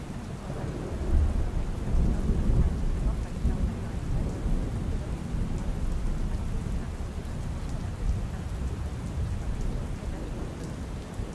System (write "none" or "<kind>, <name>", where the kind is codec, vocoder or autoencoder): none